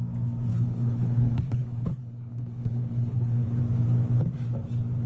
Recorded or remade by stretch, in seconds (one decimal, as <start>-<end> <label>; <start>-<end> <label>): 0.0-0.5 recorded; 0.5-3.6 remade; 3.6-5.1 recorded